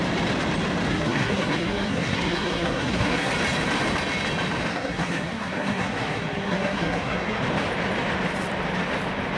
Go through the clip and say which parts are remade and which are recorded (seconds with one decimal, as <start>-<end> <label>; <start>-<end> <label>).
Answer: 0.0-0.9 recorded; 0.9-3.3 remade; 3.3-4.7 recorded; 4.7-7.4 remade; 7.4-9.4 recorded